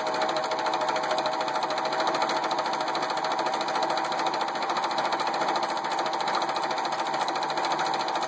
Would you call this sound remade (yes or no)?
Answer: no